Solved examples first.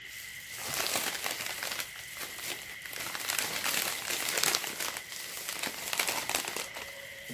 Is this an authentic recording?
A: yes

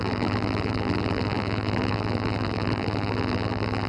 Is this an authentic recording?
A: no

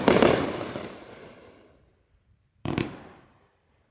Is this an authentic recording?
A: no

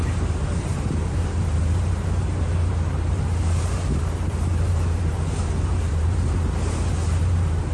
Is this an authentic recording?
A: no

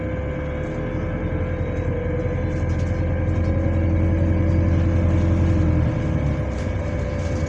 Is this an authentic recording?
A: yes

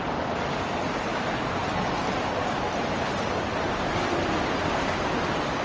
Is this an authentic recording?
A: yes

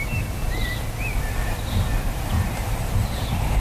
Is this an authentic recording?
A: no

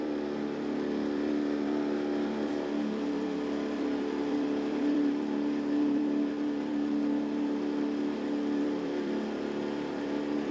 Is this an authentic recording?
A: no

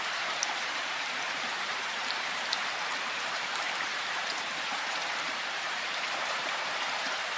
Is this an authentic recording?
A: no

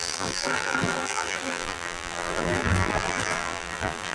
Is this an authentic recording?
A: no